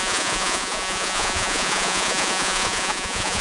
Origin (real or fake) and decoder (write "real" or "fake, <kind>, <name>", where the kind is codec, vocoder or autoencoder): fake, vocoder, Vocos